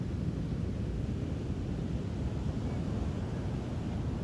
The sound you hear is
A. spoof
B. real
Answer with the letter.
B